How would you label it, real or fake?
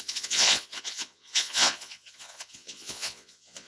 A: fake